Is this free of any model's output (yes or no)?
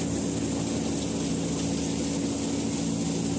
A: yes